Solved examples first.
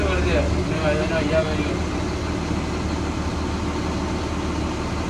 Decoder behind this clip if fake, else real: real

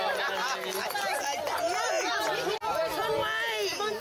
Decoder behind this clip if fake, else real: real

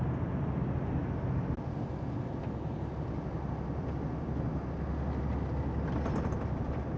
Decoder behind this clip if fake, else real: real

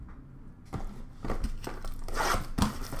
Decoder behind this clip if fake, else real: real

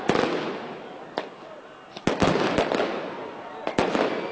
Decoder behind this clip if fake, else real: real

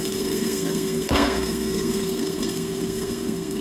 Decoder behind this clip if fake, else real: fake, codec, SNAC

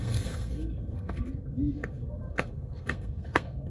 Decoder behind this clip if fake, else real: fake, codec, SNAC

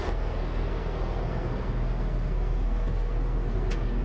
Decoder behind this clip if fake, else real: fake, codec, SNAC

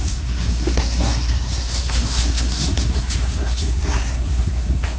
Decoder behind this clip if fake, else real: fake, codec, SNAC